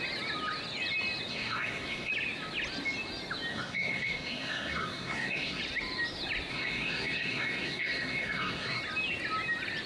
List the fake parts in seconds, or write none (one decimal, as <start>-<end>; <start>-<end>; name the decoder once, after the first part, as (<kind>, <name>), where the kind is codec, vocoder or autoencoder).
1.3-2.1 (codec, SNAC); 3.5-5.6; 6.5-8.8